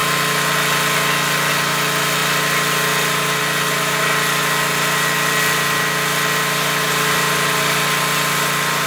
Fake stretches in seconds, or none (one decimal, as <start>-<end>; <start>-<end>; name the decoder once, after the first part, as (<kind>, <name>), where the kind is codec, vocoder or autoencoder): none